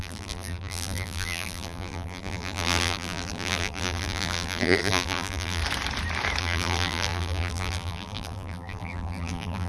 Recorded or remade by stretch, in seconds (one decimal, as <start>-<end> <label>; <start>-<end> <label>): 0.0-5.6 remade; 5.6-6.4 recorded; 6.4-9.7 remade

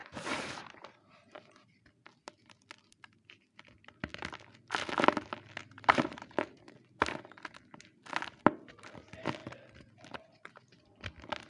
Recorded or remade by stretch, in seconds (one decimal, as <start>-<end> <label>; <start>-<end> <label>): 0.0-1.8 remade; 1.8-5.6 recorded; 5.6-6.7 remade; 6.7-11.5 recorded

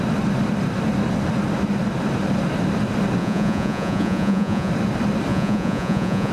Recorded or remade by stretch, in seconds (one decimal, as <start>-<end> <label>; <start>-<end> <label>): 0.0-3.2 recorded; 3.2-4.7 remade; 4.7-5.3 recorded; 5.3-6.3 remade